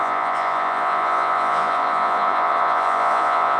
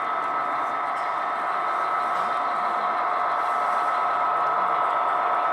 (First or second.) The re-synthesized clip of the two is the first